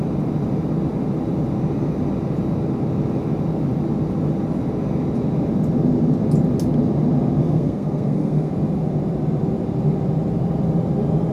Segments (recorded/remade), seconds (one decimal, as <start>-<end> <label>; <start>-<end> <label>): 0.0-7.4 recorded; 7.4-8.5 remade; 8.5-11.3 recorded